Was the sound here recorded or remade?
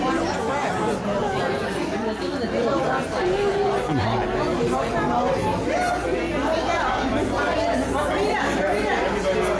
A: recorded